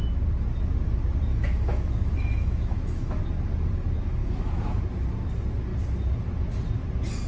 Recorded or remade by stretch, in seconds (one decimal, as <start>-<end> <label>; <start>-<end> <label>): 0.0-1.3 recorded; 1.3-3.2 remade; 3.2-4.2 recorded; 4.2-4.8 remade; 4.8-7.3 recorded